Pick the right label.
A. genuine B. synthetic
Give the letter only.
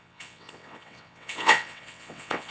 B